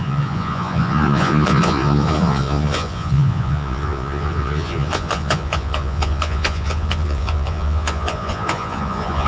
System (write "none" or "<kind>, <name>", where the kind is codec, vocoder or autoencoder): vocoder, Vocos